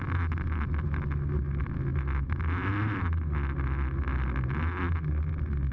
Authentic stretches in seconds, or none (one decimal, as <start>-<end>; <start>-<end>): 0.0-5.7

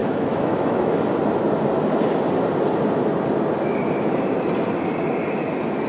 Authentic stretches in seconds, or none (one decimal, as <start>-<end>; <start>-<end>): 1.0-5.9